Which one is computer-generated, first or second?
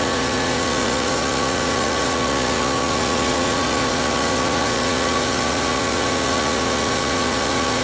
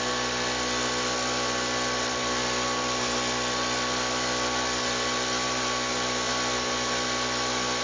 first